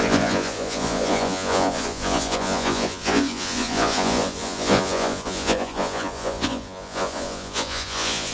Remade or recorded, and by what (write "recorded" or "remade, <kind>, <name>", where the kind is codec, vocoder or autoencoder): remade, vocoder, Vocos